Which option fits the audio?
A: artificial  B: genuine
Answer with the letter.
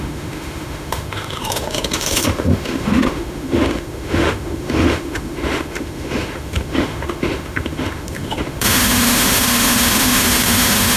A